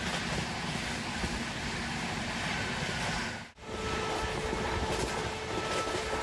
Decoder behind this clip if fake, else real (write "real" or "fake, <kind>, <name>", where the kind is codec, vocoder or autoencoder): real